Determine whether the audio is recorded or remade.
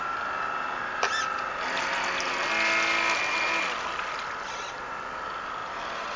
recorded